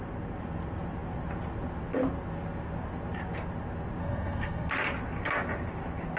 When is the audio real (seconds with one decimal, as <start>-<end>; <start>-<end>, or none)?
0.0-4.0; 4.7-6.2

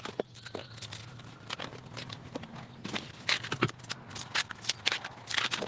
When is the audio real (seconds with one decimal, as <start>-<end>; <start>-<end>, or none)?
0.0-5.7

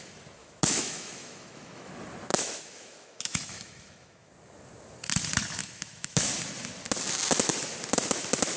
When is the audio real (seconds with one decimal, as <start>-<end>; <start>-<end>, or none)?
0.0-0.4; 1.9-2.3; 4.3-5.6; 6.3-8.6